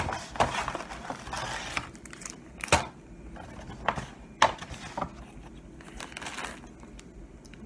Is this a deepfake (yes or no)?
no